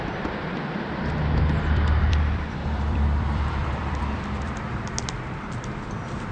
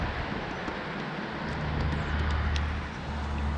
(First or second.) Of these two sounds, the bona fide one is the second